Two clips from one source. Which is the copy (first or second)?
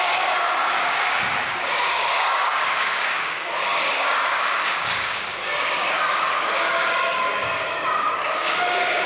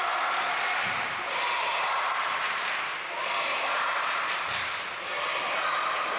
first